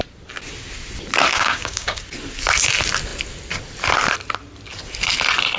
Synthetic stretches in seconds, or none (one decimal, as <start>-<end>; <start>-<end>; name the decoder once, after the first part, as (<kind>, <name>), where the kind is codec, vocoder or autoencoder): 1.3-2.0 (codec, DAC)